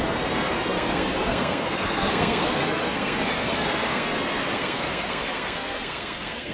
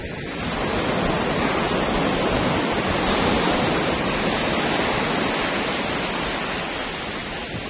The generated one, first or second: first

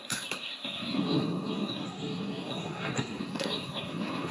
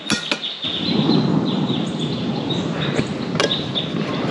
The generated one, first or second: first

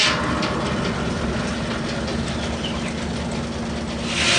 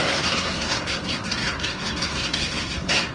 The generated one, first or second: second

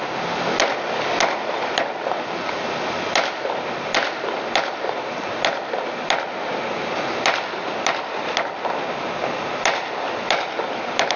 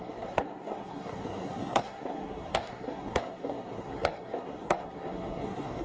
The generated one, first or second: second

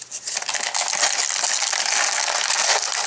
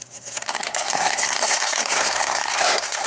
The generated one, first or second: second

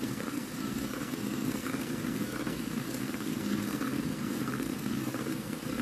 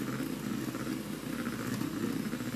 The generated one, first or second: first